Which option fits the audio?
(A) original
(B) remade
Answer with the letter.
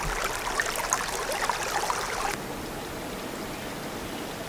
A